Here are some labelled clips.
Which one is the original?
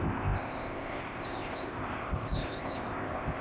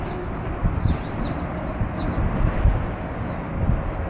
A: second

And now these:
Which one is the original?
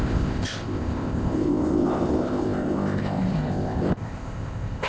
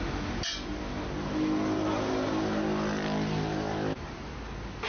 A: second